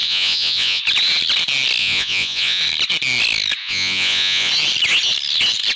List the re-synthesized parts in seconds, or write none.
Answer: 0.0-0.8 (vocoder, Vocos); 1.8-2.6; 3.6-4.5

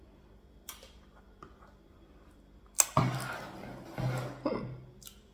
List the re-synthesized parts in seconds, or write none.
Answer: none

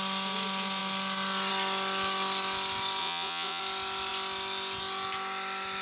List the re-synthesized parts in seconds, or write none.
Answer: 3.0-3.6 (vocoder, Vocos)

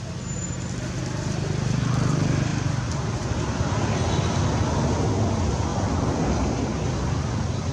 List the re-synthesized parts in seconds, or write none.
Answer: none